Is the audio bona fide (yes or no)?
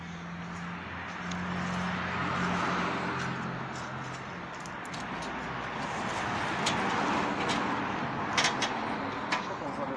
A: yes